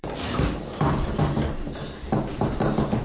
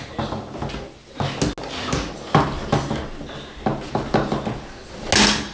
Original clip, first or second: second